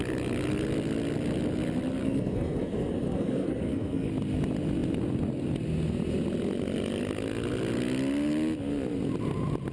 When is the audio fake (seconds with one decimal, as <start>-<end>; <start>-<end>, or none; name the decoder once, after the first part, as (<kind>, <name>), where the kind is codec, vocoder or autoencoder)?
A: 2.0-4.1 (codec, SNAC)